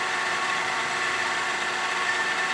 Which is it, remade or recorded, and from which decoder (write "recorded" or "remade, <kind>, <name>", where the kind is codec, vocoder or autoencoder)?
recorded